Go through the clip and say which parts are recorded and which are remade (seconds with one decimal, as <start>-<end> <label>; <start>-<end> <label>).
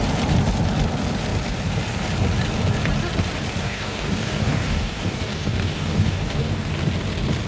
0.0-3.6 recorded; 3.6-6.7 remade; 6.7-7.5 recorded